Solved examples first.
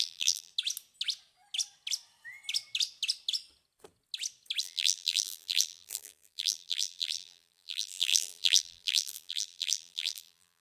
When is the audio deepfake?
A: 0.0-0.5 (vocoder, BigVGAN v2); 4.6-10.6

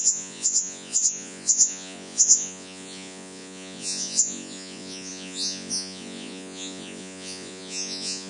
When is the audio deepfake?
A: 0.0-8.3 (vocoder, Vocos)

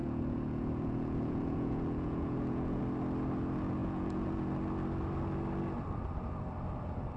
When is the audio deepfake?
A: 0.0-2.8 (vocoder, Vocos); 3.8-4.4